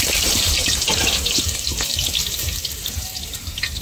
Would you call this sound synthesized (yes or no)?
yes